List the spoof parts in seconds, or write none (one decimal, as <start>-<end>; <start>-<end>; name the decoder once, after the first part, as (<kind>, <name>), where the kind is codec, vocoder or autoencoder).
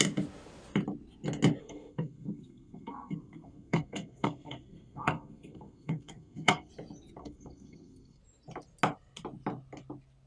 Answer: 1.6-6.7 (codec, SNAC); 7.2-8.2